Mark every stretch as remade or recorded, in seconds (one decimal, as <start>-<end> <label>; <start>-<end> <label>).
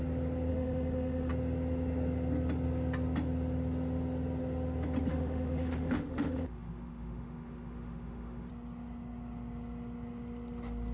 0.0-0.5 recorded; 0.5-1.3 remade; 1.3-5.1 recorded; 5.1-8.5 remade; 8.5-10.9 recorded